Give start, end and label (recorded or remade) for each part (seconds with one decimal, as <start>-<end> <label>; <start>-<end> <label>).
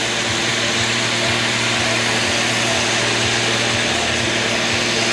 0.0-5.1 recorded